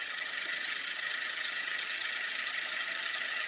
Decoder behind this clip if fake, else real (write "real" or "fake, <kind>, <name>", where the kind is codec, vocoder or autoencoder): fake, vocoder, HiFi-GAN